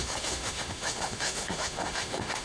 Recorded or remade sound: remade